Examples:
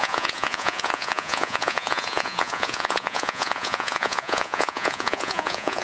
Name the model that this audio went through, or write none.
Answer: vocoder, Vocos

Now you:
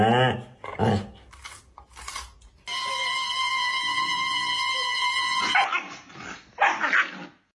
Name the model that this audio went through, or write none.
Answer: none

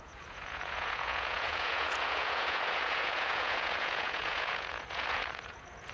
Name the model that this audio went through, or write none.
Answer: vocoder, Vocos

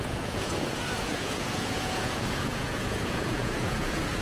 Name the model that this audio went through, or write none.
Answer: vocoder, Vocos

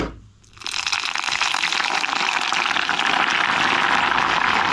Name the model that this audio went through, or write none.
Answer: none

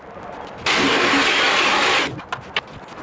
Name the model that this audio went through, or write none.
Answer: none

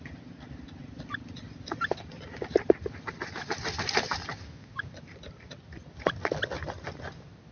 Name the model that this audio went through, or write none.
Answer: none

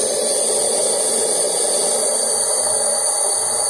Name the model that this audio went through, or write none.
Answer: none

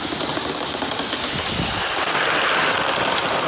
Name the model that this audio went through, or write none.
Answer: none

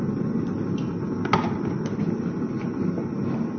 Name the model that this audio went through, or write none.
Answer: none